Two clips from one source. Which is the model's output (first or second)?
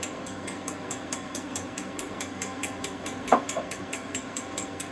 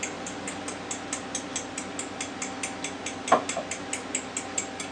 first